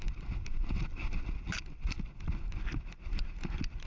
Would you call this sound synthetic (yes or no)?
no